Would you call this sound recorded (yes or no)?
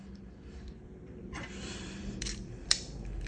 no